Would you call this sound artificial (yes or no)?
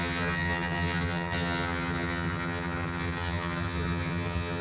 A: yes